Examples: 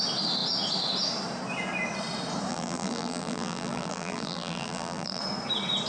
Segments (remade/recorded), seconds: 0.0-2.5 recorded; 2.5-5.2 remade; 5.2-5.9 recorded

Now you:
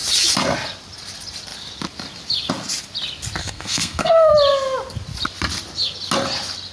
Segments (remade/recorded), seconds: 0.0-3.4 recorded; 3.4-4.3 remade; 4.3-6.7 recorded

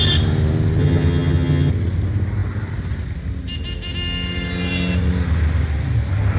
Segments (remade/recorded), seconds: 0.0-0.8 recorded; 0.8-1.7 remade; 1.7-6.4 recorded

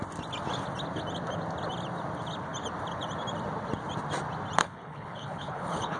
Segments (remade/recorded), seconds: 0.0-4.6 recorded; 4.6-6.0 remade

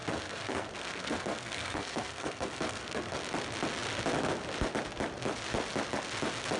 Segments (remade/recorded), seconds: 0.0-3.2 remade; 3.2-6.6 recorded

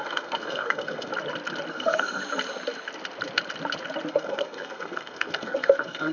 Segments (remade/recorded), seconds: 0.0-1.1 remade; 1.1-1.7 recorded; 1.7-2.2 remade; 2.2-4.1 recorded; 4.1-6.1 remade

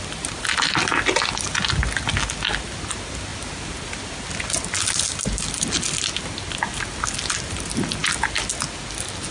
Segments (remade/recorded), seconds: 0.0-9.3 recorded